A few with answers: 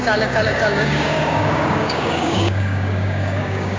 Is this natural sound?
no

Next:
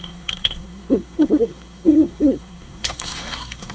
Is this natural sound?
no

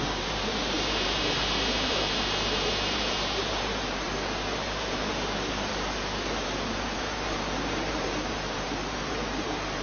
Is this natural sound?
no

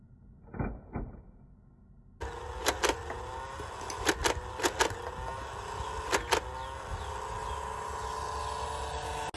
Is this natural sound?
yes